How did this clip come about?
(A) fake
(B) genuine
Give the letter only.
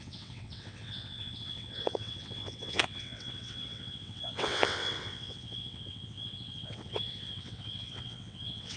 A